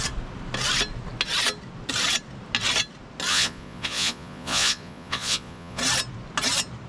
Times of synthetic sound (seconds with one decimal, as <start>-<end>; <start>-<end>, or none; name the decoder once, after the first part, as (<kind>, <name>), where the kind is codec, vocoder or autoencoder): 3.3-5.8 (vocoder, Vocos)